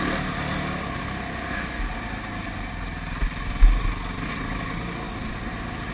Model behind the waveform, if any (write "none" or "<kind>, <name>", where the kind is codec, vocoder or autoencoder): none